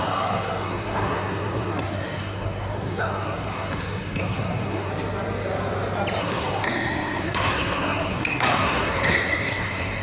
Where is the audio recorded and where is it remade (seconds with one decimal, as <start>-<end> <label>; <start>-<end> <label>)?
0.0-4.9 remade; 4.9-6.2 recorded; 6.2-10.0 remade